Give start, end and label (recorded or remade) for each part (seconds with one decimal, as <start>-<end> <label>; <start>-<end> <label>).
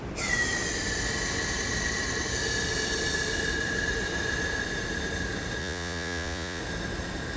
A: 0.0-5.6 recorded; 5.6-6.6 remade; 6.6-7.4 recorded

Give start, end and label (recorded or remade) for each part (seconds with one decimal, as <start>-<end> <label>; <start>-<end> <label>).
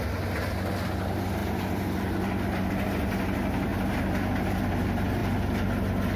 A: 0.0-6.2 recorded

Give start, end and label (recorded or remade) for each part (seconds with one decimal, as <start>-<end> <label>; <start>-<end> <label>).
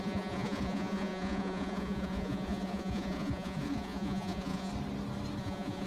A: 0.0-4.7 remade; 4.7-5.4 recorded; 5.4-5.9 remade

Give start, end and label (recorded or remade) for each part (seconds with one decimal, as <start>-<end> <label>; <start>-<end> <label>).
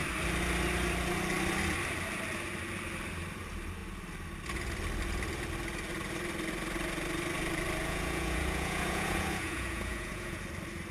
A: 0.0-7.8 recorded; 7.8-10.4 remade; 10.4-10.9 recorded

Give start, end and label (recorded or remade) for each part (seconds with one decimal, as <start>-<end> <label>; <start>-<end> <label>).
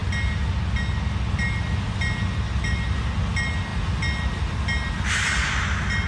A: 0.0-6.1 recorded